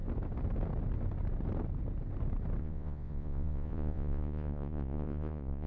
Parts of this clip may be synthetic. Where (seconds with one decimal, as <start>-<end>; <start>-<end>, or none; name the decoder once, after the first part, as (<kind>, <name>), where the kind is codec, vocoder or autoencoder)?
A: 2.6-5.7 (vocoder, Vocos)